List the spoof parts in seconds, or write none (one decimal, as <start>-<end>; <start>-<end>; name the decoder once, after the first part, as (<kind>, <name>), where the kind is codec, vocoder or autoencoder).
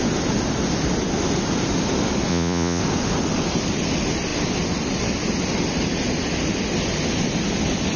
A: 2.3-2.8 (vocoder, Vocos)